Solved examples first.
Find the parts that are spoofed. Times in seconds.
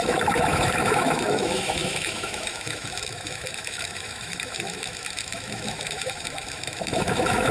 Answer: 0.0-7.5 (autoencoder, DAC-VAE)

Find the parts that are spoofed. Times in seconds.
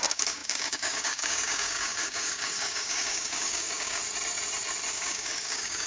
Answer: 0.0-4.0 (codec, DAC); 4.9-5.9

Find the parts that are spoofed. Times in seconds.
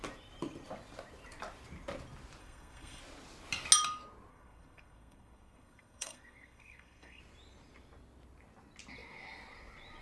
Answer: 2.4-3.0 (codec, SNAC); 4.3-7.2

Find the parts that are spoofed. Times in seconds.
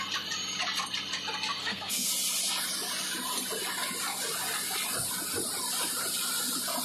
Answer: 1.6-2.1 (codec, SNAC)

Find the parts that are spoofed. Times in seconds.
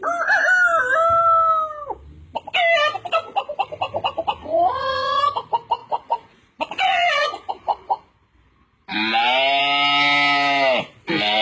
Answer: 4.4-5.2 (vocoder, Vocos); 5.8-7.5